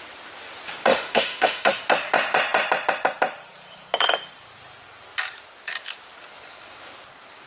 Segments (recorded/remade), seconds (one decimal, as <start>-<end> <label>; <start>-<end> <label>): 0.0-0.9 recorded; 0.9-1.6 remade; 1.6-7.5 recorded